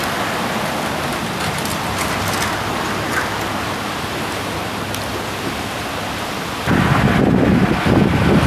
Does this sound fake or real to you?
real